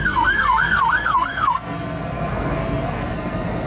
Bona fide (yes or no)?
no